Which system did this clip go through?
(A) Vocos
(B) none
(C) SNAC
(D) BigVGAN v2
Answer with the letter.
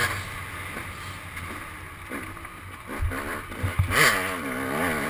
B